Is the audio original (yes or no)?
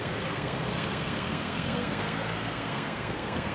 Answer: no